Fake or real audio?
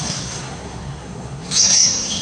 fake